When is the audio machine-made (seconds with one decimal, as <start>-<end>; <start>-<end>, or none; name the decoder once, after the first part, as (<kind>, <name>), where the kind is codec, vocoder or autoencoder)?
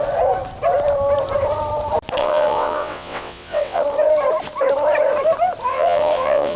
2.2-3.8 (vocoder, WaveNeXt); 5.7-6.6